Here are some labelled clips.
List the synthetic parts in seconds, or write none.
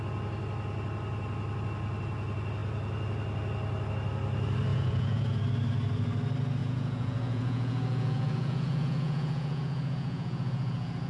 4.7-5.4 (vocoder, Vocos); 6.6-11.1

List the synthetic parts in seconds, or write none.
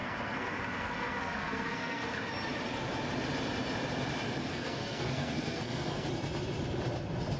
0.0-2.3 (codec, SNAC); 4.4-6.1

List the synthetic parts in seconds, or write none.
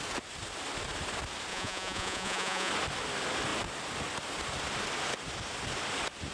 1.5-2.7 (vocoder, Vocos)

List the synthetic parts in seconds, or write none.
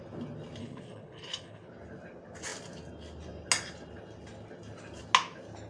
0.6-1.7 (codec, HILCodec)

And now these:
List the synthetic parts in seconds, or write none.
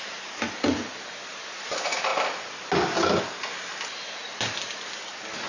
none